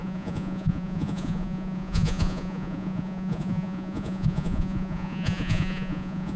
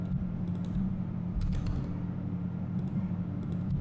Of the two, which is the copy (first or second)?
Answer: first